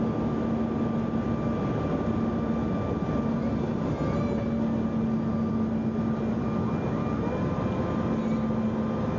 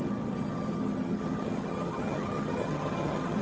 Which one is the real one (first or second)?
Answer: first